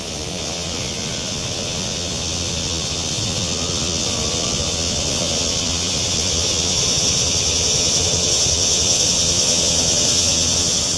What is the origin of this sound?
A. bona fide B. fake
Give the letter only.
B